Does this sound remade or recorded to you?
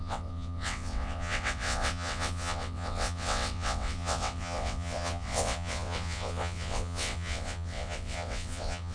remade